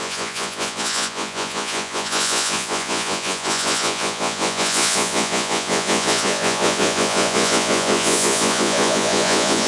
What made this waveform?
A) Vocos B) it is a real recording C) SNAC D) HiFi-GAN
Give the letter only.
A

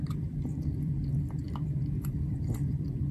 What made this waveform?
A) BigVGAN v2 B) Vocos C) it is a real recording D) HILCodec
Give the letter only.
A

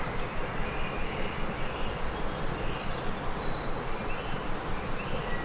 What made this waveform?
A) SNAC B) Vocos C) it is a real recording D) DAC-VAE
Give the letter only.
C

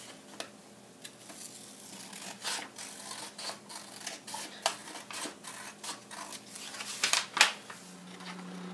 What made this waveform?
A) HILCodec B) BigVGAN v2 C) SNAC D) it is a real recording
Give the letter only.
D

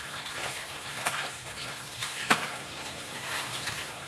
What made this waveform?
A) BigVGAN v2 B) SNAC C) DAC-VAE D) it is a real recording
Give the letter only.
B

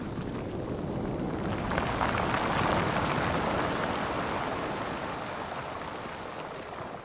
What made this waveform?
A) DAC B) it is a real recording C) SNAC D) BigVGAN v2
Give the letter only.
B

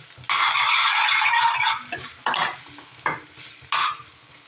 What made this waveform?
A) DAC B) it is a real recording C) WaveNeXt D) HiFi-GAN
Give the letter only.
B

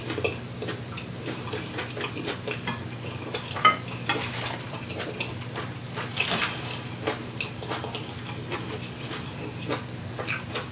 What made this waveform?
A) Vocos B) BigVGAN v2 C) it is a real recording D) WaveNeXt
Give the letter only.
C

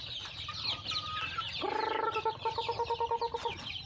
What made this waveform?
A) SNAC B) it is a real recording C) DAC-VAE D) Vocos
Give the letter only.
B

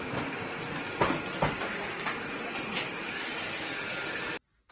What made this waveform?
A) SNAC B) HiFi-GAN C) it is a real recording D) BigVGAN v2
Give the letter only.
C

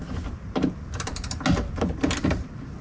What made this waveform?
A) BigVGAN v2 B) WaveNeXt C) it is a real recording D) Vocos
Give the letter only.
C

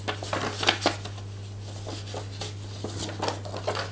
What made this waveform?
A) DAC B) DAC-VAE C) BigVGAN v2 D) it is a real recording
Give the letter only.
D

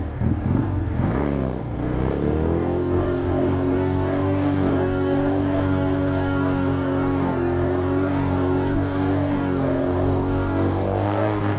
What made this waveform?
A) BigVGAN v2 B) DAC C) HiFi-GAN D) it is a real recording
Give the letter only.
B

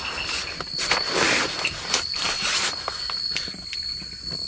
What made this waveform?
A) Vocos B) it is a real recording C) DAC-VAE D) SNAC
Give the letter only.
B